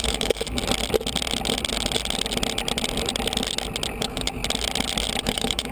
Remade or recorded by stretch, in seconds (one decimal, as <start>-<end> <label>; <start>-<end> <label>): 0.0-0.6 remade; 0.6-4.0 recorded; 4.0-4.4 remade; 4.4-5.2 recorded; 5.2-5.7 remade